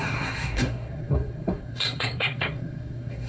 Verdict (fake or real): fake